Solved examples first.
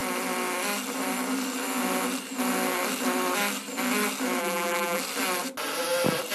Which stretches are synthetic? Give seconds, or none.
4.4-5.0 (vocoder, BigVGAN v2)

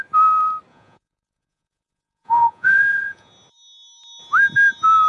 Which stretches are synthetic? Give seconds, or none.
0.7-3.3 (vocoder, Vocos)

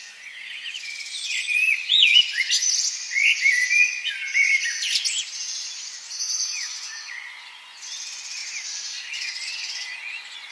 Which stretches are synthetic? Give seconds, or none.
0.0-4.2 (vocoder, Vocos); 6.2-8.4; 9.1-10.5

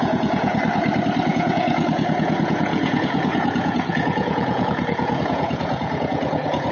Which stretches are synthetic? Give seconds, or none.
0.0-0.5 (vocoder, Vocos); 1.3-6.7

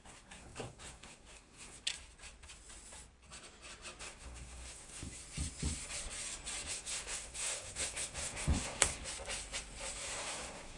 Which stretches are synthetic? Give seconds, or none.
0.0-1.9 (codec, SNAC); 4.0-5.2; 6.7-9.0; 10.0-10.8

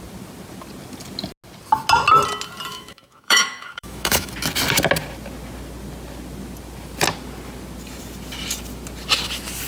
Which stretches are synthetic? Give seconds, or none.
2.7-4.3 (autoencoder, DAC-VAE)

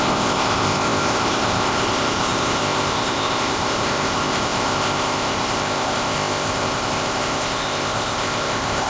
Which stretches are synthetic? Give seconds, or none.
0.0-8.9 (codec, ZipCodec)

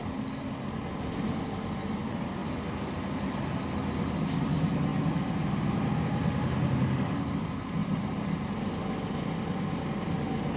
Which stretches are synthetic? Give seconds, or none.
none